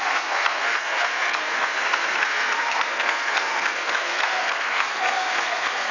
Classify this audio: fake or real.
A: fake